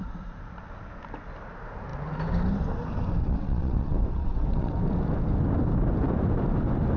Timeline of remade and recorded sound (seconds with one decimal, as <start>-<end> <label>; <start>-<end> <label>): 0.0-3.2 recorded; 3.2-4.7 remade; 4.7-7.0 recorded